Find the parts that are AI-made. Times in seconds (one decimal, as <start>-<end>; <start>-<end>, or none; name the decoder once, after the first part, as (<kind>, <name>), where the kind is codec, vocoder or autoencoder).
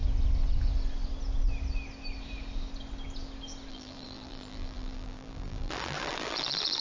3.7-6.8 (vocoder, BigVGAN v2)